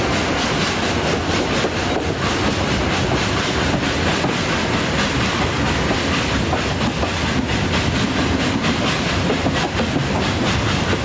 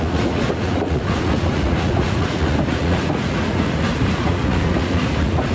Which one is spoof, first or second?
second